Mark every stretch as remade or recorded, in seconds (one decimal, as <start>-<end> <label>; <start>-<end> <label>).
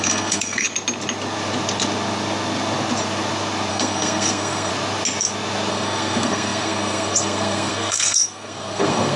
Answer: 0.0-0.7 remade; 0.7-3.7 recorded; 3.7-4.7 remade; 4.7-5.7 recorded; 5.7-9.2 remade